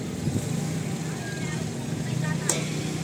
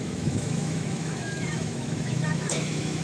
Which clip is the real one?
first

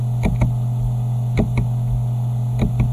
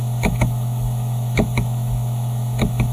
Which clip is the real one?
first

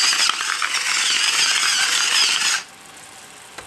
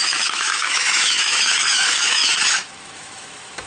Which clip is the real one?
first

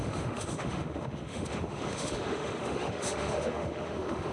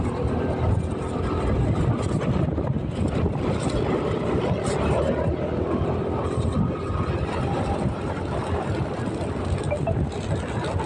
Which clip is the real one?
second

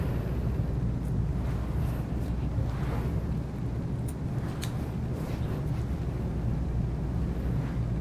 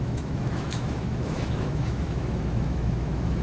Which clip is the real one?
first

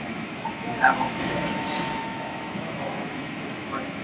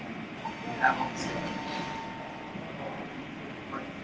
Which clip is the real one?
second